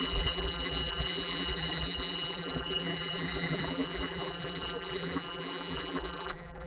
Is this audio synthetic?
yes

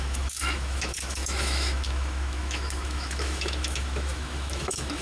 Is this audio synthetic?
yes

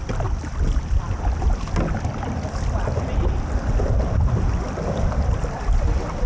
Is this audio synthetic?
no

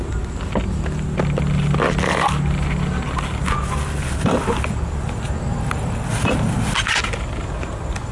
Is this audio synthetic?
no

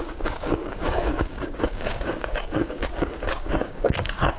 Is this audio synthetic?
yes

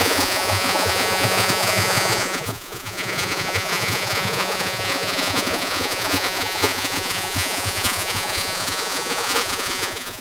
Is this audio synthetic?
yes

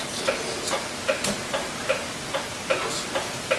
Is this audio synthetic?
no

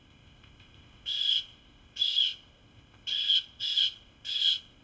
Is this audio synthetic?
yes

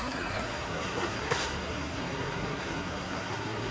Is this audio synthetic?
yes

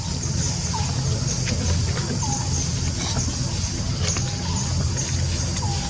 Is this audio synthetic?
no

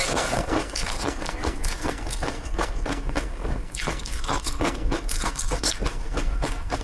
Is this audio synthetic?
yes